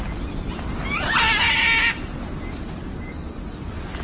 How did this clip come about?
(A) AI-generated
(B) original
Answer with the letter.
B